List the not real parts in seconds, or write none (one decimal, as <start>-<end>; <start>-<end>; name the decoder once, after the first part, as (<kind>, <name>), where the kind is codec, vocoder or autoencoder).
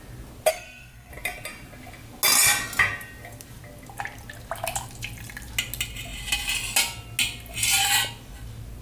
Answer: 0.5-1.1 (codec, SNAC)